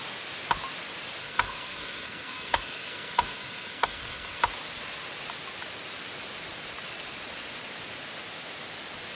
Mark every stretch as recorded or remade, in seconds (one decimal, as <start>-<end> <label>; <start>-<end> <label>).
0.0-1.2 recorded; 1.2-4.4 remade; 4.4-9.1 recorded